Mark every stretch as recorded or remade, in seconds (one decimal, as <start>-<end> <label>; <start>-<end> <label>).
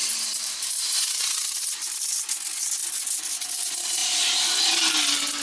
0.0-4.0 recorded; 4.0-4.6 remade; 4.6-5.4 recorded